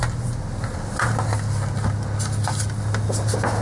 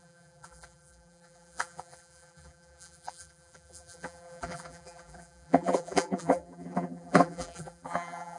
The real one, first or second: first